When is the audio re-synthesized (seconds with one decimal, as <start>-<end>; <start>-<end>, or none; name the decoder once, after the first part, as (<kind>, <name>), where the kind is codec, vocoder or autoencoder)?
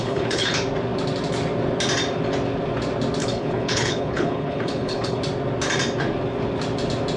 0.0-0.5 (codec, HILCodec); 3.2-5.2